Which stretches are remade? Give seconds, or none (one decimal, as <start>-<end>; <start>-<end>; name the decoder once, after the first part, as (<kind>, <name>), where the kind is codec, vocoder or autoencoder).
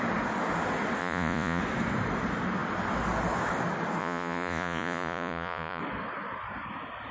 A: 1.0-1.6 (vocoder, Vocos); 4.0-5.8